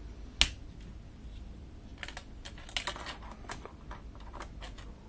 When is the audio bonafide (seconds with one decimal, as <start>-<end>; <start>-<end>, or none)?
0.0-5.1